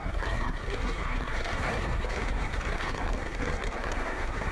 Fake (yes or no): yes